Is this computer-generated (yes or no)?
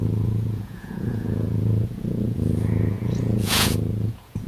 yes